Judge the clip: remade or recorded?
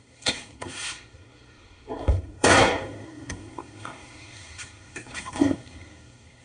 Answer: remade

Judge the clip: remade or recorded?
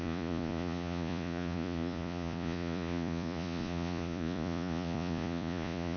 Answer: remade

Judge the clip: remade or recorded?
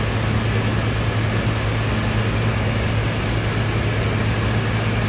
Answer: recorded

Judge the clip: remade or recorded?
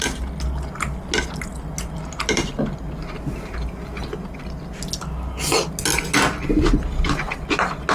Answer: recorded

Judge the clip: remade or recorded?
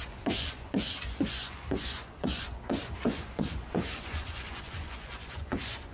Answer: remade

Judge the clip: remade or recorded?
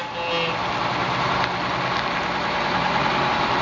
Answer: recorded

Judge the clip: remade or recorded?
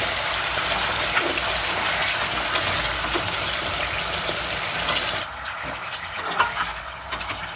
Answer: recorded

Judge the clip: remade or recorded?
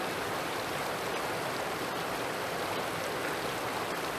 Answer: recorded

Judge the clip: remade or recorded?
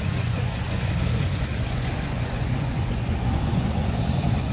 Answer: remade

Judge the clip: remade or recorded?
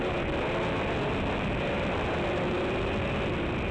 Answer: recorded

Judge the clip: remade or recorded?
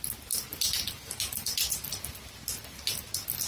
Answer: recorded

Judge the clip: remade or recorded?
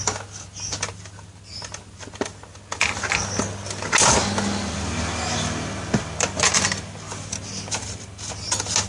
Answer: recorded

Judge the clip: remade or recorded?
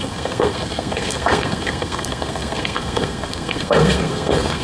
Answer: remade